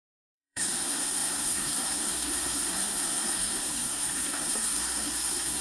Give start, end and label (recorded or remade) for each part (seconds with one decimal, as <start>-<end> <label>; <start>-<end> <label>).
0.0-5.6 remade